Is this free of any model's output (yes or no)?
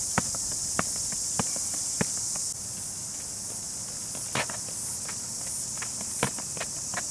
yes